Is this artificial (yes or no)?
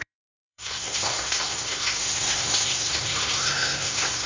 yes